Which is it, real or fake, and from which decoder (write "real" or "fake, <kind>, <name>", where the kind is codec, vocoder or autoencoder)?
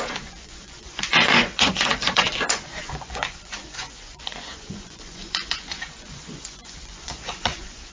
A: fake, vocoder, Vocos